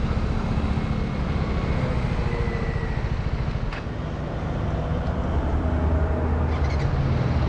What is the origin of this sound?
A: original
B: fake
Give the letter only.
A